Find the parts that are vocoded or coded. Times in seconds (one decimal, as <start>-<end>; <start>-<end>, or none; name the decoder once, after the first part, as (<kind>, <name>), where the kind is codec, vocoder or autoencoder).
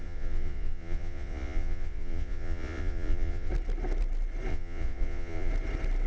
0.0-3.5 (vocoder, Vocos); 4.5-5.5